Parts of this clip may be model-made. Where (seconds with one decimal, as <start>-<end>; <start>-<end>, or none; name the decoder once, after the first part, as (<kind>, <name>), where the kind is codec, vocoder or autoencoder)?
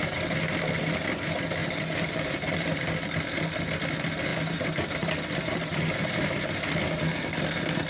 1.6-2.9 (vocoder, BigVGAN v2); 4.3-6.5